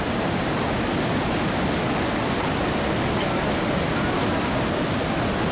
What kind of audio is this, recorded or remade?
recorded